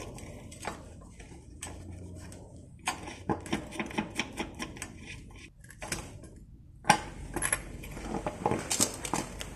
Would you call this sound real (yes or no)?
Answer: yes